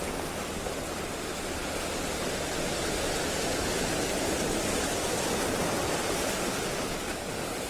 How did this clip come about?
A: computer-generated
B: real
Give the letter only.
B